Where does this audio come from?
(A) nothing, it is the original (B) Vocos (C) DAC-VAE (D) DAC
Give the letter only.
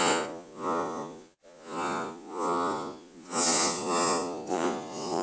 B